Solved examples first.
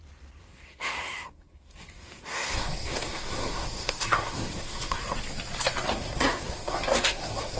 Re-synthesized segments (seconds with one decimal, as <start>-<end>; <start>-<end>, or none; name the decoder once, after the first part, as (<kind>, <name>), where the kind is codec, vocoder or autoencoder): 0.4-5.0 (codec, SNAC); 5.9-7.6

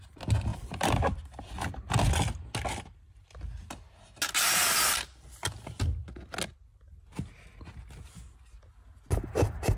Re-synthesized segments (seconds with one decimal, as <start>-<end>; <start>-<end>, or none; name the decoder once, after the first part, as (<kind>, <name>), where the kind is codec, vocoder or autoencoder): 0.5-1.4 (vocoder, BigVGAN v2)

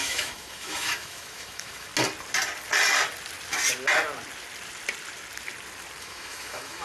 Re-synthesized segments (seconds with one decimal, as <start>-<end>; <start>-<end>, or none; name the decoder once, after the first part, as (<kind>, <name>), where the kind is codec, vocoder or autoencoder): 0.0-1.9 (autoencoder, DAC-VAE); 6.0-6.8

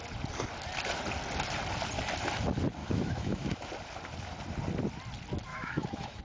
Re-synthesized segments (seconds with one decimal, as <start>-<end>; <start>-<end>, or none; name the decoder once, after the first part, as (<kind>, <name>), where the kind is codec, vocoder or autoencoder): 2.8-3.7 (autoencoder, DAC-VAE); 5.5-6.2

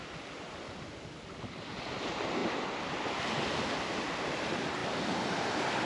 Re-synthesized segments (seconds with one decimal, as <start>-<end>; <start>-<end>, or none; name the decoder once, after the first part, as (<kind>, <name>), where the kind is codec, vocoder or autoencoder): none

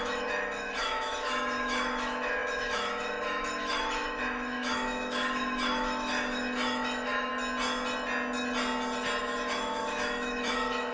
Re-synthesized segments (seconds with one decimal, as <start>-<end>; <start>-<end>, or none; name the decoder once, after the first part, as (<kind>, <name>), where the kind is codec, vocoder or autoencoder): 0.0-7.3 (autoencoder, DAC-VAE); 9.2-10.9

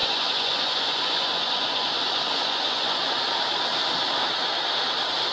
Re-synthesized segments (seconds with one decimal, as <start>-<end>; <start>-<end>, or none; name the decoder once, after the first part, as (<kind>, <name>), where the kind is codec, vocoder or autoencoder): 0.0-3.2 (vocoder, Vocos)